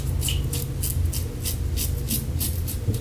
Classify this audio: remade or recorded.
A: recorded